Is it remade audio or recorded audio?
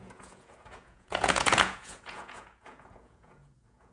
remade